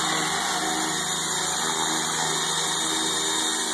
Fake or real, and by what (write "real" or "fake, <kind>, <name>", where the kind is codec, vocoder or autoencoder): real